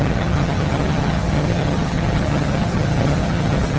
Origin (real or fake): fake